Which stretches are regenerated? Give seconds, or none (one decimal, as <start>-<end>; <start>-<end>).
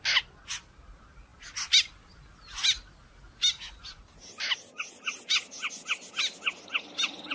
none